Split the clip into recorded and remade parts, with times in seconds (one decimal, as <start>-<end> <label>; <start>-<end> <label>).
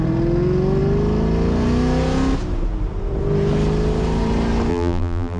0.0-4.7 recorded; 4.7-5.4 remade